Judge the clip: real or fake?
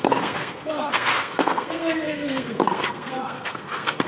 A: fake